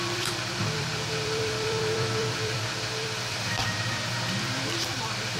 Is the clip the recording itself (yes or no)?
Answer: no